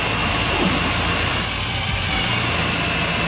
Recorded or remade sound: recorded